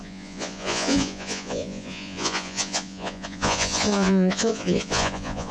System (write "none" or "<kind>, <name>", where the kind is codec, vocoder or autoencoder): vocoder, Vocos